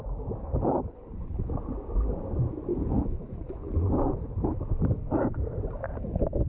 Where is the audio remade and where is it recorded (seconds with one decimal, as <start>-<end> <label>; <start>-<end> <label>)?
0.0-0.4 recorded; 0.4-1.5 remade; 1.5-2.7 recorded; 2.7-4.6 remade; 4.6-6.5 recorded